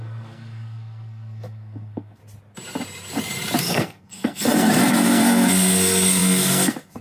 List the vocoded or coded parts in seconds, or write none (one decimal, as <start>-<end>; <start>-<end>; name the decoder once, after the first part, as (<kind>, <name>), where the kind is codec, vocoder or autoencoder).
0.0-2.2 (codec, SNAC); 3.6-7.0